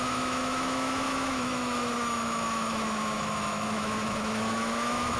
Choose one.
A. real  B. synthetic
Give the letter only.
B